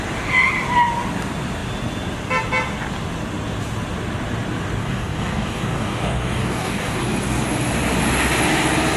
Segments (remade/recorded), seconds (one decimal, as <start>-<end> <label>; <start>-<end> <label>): 0.0-4.8 recorded; 4.8-7.0 remade; 7.0-9.0 recorded